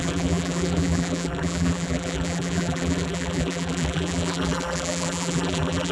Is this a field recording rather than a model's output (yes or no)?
no